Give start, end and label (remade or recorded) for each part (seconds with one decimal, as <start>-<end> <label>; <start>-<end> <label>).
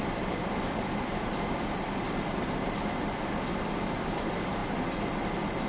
0.0-4.6 remade; 4.6-5.2 recorded; 5.2-5.7 remade